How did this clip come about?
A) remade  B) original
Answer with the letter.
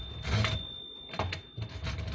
B